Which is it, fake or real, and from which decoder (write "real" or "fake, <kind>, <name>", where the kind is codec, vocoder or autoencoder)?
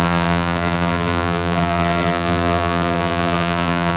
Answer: fake, vocoder, BigVGAN v2